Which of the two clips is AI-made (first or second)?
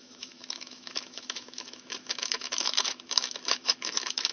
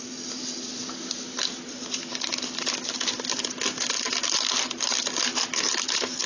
first